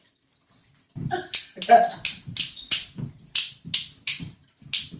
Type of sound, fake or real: real